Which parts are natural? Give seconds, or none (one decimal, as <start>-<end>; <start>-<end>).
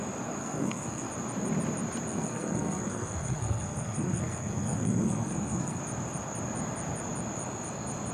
0.0-0.4; 1.1-2.1; 5.8-8.1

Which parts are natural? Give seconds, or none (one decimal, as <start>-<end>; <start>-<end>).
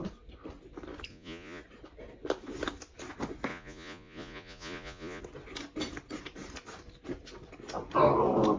0.0-1.1; 1.6-3.5; 5.2-8.6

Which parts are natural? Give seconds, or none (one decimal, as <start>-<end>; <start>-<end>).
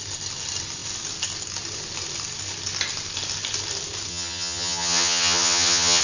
0.0-4.1